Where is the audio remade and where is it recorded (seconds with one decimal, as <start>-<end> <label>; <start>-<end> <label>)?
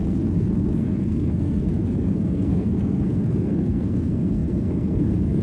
0.0-5.4 remade